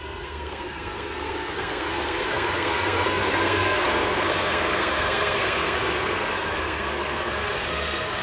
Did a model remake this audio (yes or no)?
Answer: yes